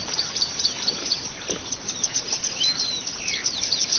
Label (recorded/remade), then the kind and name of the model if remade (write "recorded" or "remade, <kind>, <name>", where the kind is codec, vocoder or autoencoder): remade, vocoder, BigVGAN v2